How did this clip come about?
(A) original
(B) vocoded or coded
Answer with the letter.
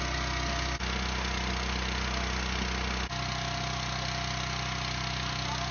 A